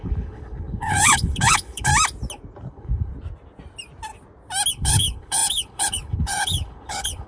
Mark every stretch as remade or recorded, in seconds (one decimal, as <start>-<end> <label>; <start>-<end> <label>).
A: 0.0-1.9 remade; 1.9-2.7 recorded; 2.7-3.1 remade; 3.1-4.7 recorded; 4.7-7.3 remade

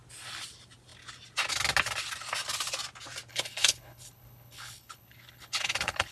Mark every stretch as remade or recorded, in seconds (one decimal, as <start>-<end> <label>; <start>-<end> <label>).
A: 0.0-3.3 recorded; 3.3-6.1 remade